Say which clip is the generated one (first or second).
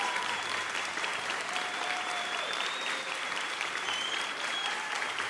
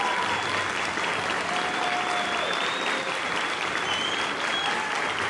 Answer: first